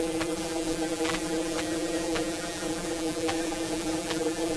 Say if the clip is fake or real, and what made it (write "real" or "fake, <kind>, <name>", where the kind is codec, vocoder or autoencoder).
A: fake, vocoder, BigVGAN v2